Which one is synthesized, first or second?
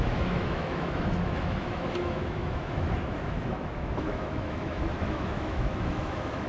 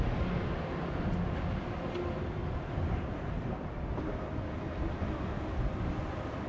first